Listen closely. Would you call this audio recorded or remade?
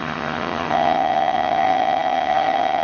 remade